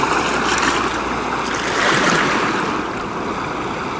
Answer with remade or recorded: recorded